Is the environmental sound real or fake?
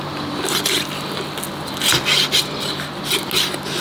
real